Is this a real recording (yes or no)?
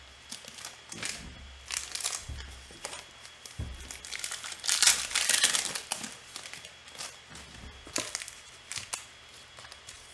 yes